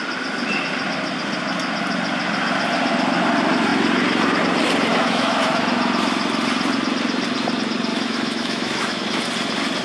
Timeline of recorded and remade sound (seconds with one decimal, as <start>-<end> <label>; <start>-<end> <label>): 0.0-4.9 recorded; 4.9-5.6 remade; 5.6-7.9 recorded; 7.9-9.0 remade; 9.0-9.8 recorded